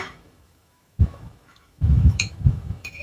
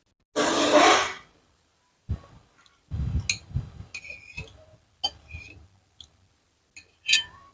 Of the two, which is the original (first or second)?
second